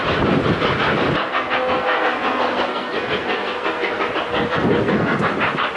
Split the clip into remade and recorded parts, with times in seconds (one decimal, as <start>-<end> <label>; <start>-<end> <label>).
0.0-1.2 recorded; 1.2-4.1 remade; 4.1-4.5 recorded; 4.5-5.2 remade; 5.2-5.8 recorded